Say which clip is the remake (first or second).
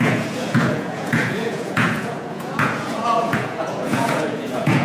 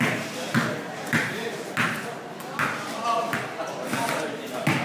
first